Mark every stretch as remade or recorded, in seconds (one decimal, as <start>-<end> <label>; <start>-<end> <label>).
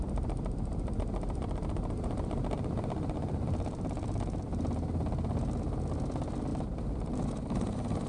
0.0-4.9 remade; 4.9-6.5 recorded; 6.5-7.3 remade; 7.3-8.1 recorded